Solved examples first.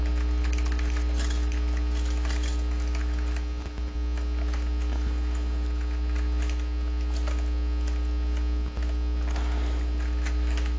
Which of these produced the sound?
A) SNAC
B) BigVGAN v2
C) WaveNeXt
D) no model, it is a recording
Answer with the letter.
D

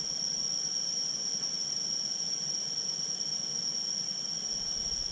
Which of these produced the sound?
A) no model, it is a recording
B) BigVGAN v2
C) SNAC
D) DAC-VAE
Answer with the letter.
A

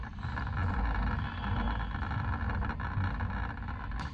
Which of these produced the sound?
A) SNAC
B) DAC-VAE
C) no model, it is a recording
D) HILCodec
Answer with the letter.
C